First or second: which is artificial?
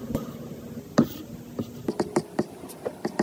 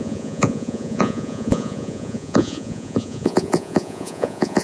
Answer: second